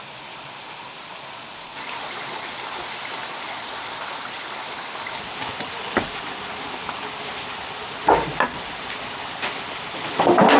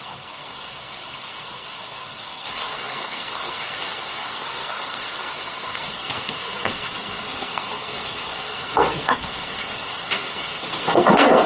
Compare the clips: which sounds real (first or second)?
first